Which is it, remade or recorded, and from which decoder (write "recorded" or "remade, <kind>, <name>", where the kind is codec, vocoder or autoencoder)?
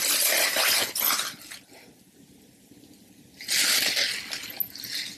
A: recorded